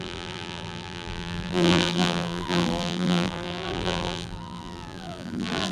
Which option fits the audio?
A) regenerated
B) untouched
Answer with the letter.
A